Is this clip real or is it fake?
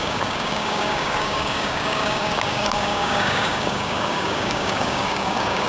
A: fake